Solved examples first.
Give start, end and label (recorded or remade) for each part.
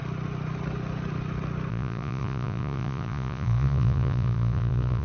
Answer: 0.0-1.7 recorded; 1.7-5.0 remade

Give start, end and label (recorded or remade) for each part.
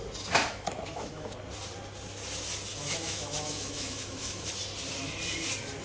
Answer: 0.0-0.4 recorded; 0.4-1.4 remade; 1.4-2.7 recorded; 2.7-4.5 remade; 4.5-5.8 recorded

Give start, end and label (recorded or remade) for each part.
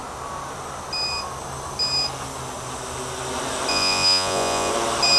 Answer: 0.0-3.7 recorded; 3.7-4.7 remade; 4.7-5.2 recorded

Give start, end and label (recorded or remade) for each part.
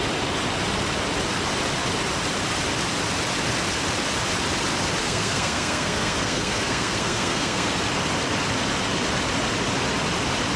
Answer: 0.0-5.0 recorded; 5.0-7.8 remade; 7.8-10.6 recorded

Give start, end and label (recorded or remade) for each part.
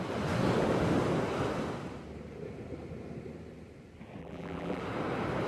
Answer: 0.0-4.2 recorded; 4.2-4.8 remade; 4.8-5.5 recorded